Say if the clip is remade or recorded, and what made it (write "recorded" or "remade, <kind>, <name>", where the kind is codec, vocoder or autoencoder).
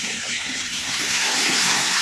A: remade, codec, SNAC